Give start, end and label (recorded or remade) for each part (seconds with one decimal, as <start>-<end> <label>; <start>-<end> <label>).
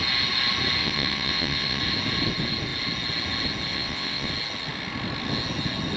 0.0-0.8 recorded; 0.8-1.8 remade; 1.8-3.7 recorded; 3.7-4.3 remade; 4.3-6.0 recorded